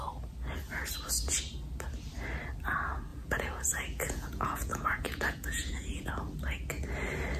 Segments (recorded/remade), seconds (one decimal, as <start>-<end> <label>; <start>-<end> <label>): 0.0-3.1 recorded; 3.1-6.1 remade; 6.1-7.4 recorded